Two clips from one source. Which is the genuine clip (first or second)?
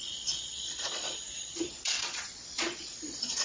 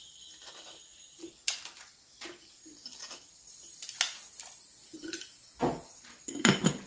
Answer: second